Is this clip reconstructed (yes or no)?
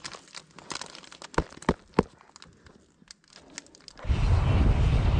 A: no